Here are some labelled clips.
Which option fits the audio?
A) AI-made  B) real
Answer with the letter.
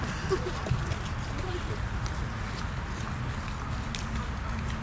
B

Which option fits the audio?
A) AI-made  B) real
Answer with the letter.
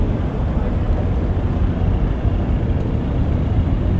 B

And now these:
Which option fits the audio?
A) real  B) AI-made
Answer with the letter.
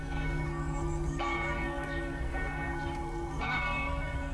B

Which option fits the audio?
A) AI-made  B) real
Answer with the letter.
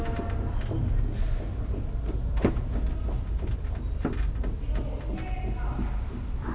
B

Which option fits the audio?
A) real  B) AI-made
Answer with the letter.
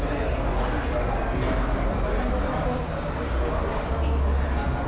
A